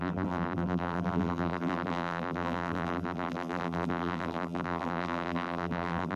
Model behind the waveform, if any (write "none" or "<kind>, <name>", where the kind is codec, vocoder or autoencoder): vocoder, BigVGAN v2